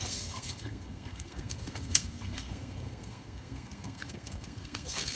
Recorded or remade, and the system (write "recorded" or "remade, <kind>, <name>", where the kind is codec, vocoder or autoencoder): remade, codec, SNAC